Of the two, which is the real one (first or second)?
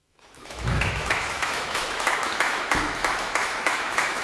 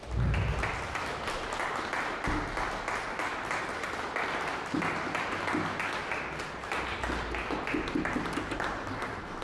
second